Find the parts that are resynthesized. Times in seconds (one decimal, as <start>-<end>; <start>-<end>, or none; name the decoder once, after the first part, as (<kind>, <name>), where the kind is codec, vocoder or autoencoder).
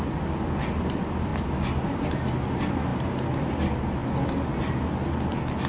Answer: none